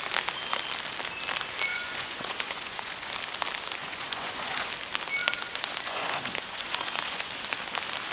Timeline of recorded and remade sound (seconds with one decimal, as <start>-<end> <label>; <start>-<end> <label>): 0.0-1.7 recorded; 1.7-3.1 remade; 3.1-3.8 recorded; 3.8-4.7 remade; 4.7-5.2 recorded; 5.2-7.3 remade; 7.3-8.1 recorded